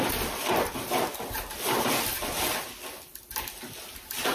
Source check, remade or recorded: recorded